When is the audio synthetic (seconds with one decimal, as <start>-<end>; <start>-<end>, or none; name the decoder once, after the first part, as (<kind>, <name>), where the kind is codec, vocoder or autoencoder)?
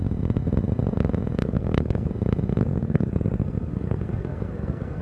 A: 1.4-2.1 (codec, SNAC); 2.6-5.0